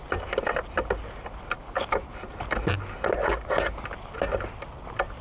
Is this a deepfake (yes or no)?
no